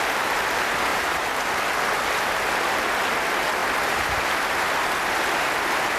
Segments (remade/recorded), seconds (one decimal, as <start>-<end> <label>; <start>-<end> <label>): 0.0-0.9 recorded; 0.9-1.6 remade; 1.6-6.0 recorded